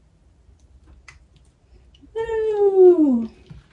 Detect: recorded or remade recorded